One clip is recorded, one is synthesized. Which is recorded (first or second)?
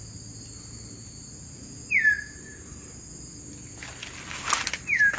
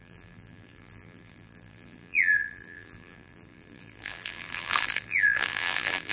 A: first